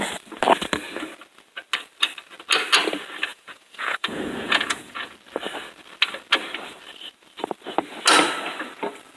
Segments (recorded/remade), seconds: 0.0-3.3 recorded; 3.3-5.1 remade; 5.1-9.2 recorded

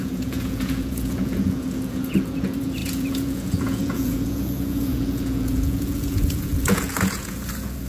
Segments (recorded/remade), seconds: 0.0-7.9 remade

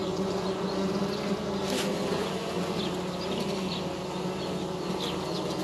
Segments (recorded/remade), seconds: 0.0-1.0 remade; 1.0-2.1 recorded; 2.1-2.8 remade; 2.8-5.6 recorded